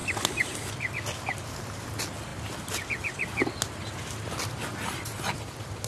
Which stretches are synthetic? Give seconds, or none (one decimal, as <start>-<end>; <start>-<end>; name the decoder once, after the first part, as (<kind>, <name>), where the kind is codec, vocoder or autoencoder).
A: none